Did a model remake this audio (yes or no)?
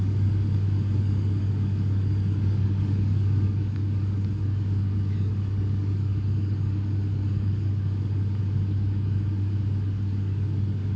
yes